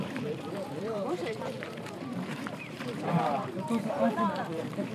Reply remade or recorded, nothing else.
remade